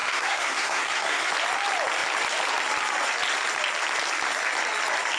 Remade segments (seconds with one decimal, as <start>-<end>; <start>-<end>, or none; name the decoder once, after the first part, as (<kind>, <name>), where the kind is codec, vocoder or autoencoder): 0.0-1.3 (codec, SNAC)

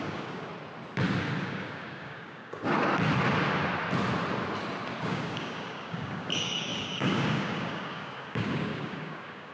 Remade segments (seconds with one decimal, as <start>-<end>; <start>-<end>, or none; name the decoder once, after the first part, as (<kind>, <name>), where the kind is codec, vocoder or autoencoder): 0.0-0.5 (codec, DAC); 1.4-2.6; 5.0-9.5

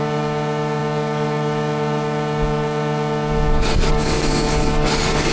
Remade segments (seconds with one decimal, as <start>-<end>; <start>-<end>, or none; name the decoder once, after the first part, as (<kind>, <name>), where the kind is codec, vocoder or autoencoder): 0.0-5.3 (codec, DAC)

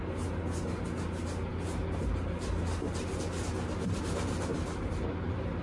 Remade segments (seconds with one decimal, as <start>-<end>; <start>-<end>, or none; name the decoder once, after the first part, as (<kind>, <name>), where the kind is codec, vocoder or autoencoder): none